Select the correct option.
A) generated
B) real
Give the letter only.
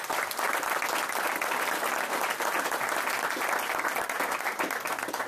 B